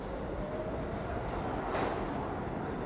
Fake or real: real